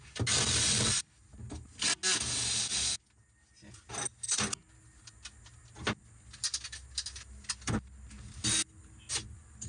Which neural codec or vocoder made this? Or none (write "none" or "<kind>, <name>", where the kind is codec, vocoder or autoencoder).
none